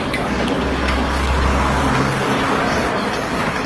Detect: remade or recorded remade